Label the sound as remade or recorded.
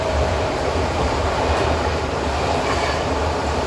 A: remade